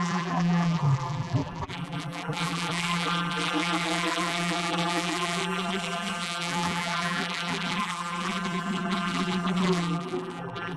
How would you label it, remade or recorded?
remade